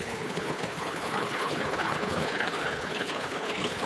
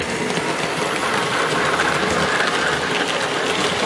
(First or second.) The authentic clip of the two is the second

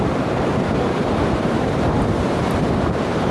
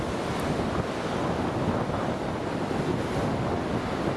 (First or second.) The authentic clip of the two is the second